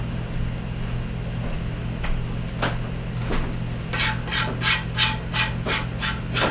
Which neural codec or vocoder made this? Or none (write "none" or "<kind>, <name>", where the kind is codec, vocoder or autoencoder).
none